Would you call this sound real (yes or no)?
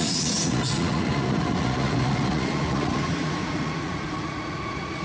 no